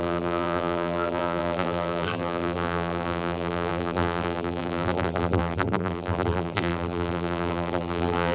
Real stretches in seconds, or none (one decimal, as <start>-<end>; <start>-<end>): none